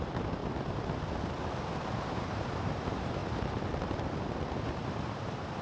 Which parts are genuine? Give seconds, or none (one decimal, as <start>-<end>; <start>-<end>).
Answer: 0.4-1.4

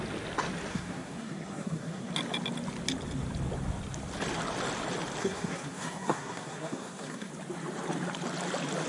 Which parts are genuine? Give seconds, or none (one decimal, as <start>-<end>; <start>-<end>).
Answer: 0.0-0.7; 2.1-5.2; 7.3-8.9

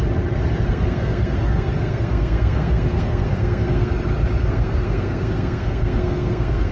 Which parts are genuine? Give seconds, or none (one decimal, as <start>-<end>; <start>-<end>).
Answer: 0.0-0.7; 3.9-4.4